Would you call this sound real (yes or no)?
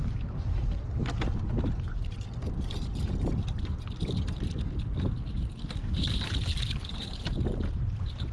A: yes